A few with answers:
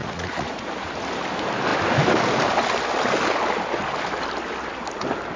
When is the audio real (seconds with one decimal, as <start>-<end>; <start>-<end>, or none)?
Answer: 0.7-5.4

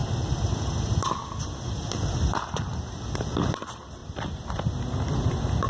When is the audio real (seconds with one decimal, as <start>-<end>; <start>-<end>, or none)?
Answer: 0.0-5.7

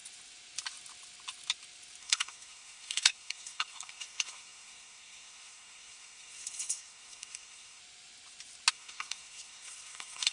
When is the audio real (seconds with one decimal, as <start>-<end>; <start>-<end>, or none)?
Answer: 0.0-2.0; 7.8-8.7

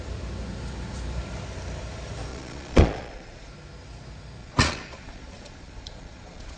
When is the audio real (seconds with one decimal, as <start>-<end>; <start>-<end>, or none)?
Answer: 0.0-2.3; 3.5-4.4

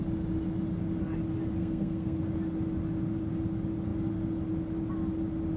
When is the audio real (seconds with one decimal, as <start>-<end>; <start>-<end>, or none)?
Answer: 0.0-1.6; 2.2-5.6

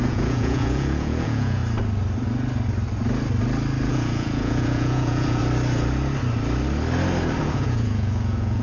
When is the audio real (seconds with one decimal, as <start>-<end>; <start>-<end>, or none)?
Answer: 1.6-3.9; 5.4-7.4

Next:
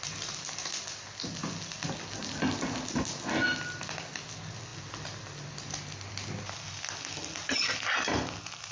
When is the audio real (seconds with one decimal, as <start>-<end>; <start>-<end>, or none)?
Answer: 0.0-8.7

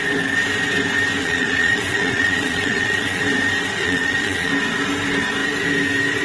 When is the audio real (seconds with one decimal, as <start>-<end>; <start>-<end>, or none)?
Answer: 0.0-1.2; 3.2-3.8; 4.5-6.2